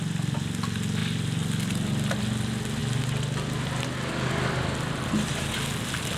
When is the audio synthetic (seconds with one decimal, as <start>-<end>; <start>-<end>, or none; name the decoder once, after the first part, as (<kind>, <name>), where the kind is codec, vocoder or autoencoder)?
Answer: none